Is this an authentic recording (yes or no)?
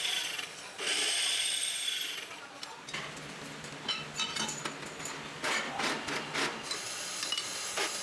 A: yes